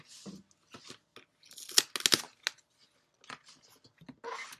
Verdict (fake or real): real